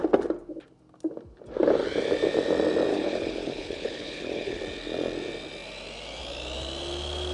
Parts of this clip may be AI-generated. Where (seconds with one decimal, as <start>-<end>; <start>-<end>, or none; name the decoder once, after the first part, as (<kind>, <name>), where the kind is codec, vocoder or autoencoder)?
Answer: 2.9-4.6 (codec, HILCodec)